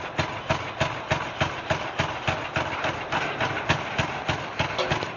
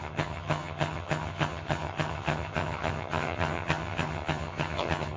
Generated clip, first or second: second